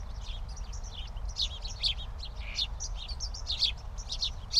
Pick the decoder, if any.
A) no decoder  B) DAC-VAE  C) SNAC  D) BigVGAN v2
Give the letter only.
A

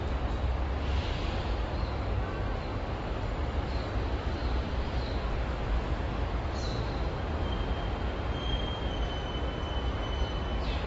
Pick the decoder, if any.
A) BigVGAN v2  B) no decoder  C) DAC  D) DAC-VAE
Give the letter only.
B